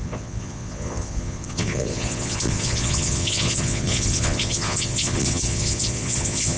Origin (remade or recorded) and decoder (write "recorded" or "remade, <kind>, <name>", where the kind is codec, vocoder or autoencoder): remade, vocoder, Vocos